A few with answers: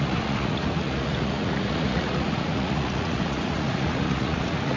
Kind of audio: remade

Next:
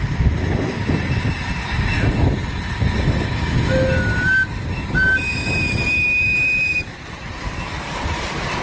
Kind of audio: recorded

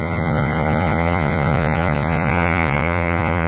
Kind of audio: remade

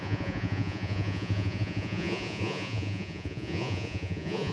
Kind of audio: remade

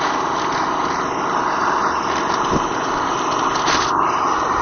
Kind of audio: recorded